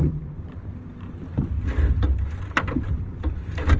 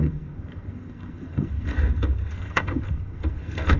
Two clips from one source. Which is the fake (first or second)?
second